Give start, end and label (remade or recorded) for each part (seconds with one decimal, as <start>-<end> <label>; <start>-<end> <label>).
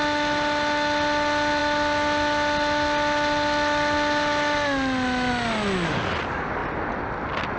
0.0-7.6 recorded